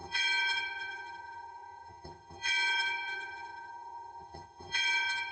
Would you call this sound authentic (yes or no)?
no